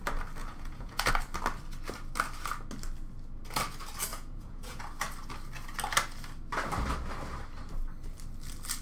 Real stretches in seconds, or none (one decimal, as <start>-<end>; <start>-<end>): 0.0-0.4; 1.1-4.1; 4.8-8.8